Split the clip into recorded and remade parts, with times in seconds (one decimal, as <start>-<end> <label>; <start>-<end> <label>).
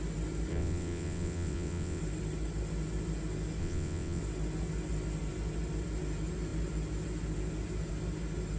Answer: 0.0-0.5 recorded; 0.5-2.0 remade; 2.0-3.6 recorded; 3.6-4.2 remade; 4.2-8.6 recorded